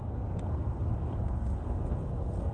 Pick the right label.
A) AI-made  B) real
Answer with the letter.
A